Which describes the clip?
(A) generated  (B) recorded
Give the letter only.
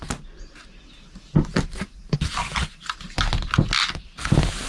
B